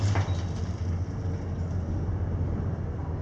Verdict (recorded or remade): recorded